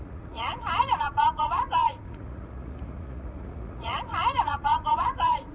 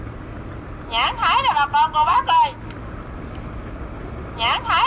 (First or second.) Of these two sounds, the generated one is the first